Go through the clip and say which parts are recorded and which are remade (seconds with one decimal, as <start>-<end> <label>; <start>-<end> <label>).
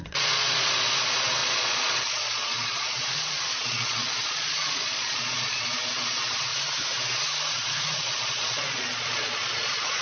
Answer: 0.0-6.5 remade; 6.5-7.5 recorded; 7.5-10.0 remade